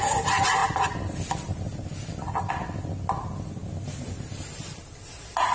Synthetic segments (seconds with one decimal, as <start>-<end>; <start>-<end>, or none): none